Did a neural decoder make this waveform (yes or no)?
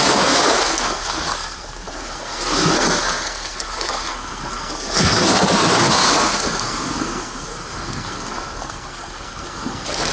yes